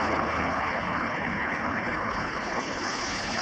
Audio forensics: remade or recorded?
remade